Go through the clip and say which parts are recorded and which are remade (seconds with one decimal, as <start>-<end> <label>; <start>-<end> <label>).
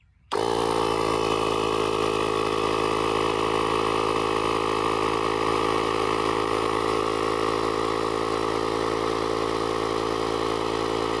0.0-5.5 recorded; 5.5-7.0 remade; 7.0-11.2 recorded